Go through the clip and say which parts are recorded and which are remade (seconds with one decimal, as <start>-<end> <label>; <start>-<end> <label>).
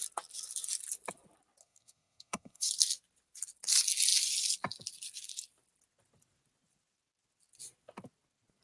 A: 0.0-1.6 recorded; 1.6-2.7 remade; 2.7-8.6 recorded